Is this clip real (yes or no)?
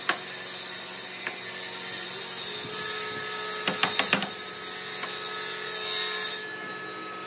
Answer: yes